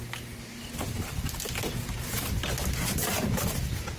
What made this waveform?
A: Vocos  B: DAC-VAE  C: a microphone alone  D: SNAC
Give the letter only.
C